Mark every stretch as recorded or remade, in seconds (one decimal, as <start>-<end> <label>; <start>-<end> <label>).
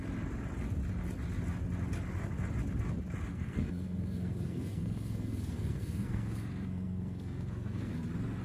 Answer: 0.0-3.3 recorded; 3.3-7.9 remade; 7.9-8.4 recorded